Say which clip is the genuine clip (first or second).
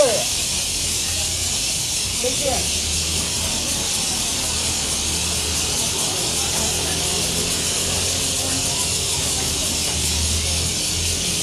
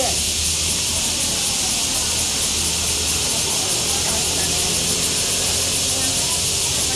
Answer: second